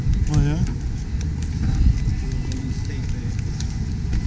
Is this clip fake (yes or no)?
no